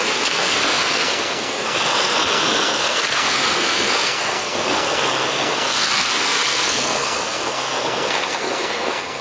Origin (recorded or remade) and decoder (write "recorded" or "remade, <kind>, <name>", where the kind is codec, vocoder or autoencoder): remade, codec, SNAC